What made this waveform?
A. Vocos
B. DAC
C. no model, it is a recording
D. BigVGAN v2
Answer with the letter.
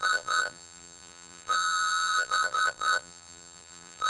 D